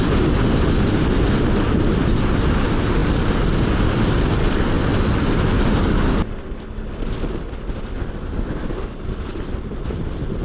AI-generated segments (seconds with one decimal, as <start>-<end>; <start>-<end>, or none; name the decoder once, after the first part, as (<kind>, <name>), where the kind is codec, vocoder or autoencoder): none